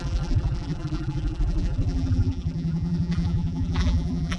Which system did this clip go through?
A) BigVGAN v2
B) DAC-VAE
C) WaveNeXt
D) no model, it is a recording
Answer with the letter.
A